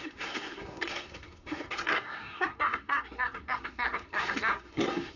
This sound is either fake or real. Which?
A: fake